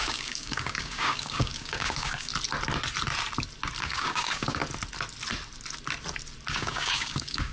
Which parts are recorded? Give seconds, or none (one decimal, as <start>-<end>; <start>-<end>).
2.3-3.8; 4.6-6.5